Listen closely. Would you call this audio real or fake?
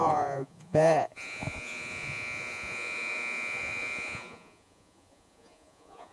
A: fake